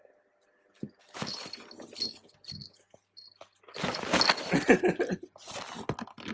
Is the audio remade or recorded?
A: recorded